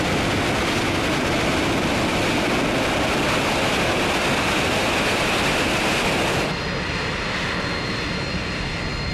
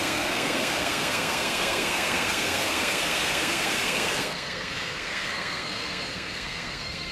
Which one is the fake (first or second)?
second